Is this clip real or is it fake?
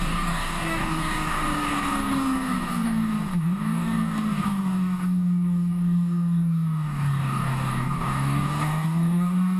fake